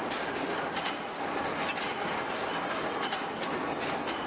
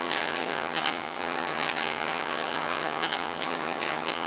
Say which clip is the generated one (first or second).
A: second